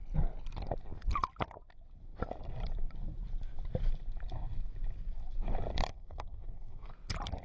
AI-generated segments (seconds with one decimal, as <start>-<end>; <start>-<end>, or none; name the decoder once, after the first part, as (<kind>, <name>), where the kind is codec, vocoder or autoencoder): 5.9-6.9 (codec, SNAC)